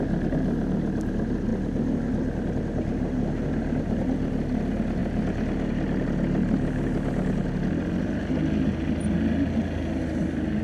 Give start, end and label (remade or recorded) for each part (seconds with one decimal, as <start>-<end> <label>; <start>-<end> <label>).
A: 0.0-10.6 recorded